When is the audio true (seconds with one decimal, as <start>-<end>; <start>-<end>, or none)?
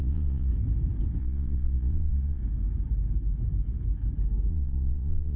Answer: 0.5-1.2; 2.4-4.5